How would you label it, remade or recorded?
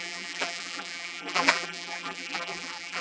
remade